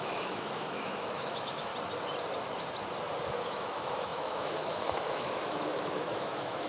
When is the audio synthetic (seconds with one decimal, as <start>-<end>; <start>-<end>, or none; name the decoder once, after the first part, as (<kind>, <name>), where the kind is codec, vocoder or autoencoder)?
0.0-1.7 (autoencoder, DAC-VAE); 3.4-6.7